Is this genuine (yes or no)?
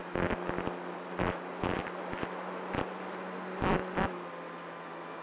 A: yes